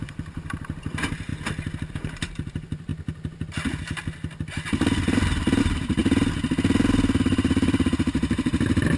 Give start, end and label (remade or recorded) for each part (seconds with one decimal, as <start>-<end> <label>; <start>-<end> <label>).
0.0-1.3 remade; 1.3-1.9 recorded; 1.9-2.9 remade; 2.9-5.6 recorded; 5.6-6.0 remade; 6.0-7.2 recorded; 7.2-9.0 remade